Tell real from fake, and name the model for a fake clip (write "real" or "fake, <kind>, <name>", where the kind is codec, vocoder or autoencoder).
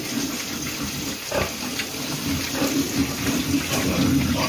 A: real